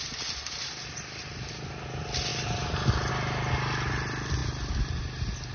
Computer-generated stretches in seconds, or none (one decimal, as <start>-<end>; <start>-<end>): 2.3-3.1; 4.4-5.0

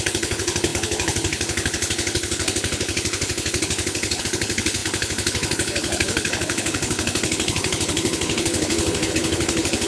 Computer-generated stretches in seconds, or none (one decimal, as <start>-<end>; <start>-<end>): 0.0-9.9